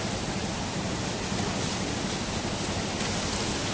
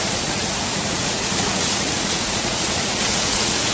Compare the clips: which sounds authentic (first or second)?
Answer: first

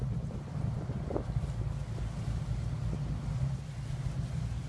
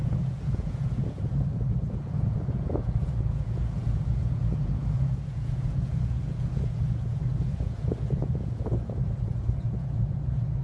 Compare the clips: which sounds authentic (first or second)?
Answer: first